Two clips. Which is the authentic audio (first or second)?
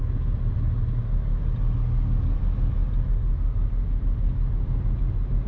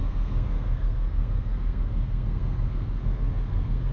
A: first